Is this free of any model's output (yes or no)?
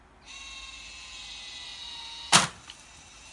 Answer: yes